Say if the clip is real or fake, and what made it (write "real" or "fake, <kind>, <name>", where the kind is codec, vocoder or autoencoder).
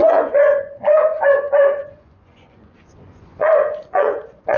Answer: fake, vocoder, Vocos